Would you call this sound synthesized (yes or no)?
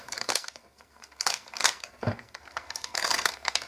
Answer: yes